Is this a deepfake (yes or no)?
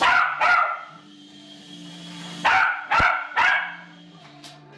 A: yes